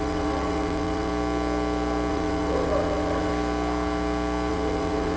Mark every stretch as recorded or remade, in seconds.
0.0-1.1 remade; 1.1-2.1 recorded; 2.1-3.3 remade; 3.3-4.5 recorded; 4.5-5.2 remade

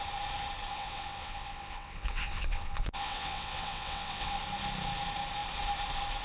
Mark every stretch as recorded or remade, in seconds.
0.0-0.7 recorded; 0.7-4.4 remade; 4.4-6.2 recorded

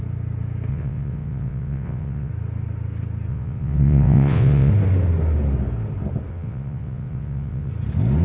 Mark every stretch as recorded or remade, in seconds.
0.0-0.7 recorded; 0.7-2.3 remade; 2.3-3.3 recorded; 3.3-4.7 remade; 4.7-6.3 recorded; 6.3-7.7 remade; 7.7-8.2 recorded